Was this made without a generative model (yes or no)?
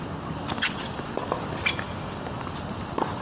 yes